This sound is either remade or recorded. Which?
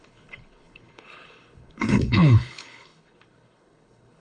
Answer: remade